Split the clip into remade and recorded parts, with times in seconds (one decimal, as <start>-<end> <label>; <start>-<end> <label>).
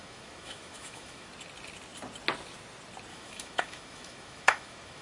0.0-1.3 remade; 1.3-3.1 recorded; 3.1-5.0 remade